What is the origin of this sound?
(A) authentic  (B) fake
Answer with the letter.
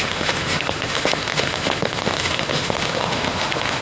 B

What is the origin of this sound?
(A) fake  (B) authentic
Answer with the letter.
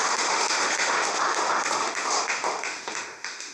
A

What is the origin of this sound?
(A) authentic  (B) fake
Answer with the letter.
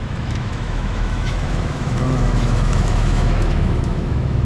B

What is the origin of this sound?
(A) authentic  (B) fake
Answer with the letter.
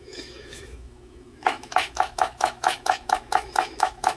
B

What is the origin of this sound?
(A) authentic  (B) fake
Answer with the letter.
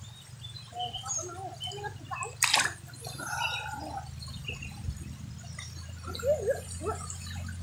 A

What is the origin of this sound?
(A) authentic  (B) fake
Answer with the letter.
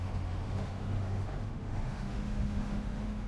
B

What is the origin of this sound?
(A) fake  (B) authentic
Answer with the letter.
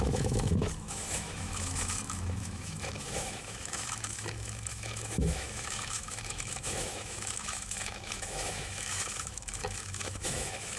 A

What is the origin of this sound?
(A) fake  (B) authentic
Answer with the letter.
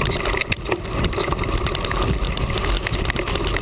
B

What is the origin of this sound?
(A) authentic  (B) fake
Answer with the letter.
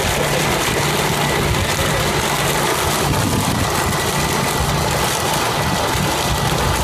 A